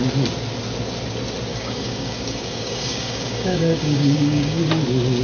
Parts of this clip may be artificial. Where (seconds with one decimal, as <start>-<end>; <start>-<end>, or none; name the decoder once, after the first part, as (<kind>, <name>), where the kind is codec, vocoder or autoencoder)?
1.5-4.6 (codec, DAC)